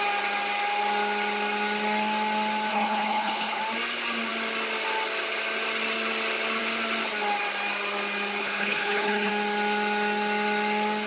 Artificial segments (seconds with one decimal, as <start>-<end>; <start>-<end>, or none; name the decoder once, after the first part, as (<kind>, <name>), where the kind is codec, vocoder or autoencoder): 2.7-3.6 (codec, HILCodec); 8.4-9.3